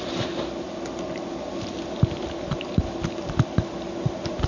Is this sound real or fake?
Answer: real